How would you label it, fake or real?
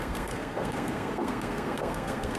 fake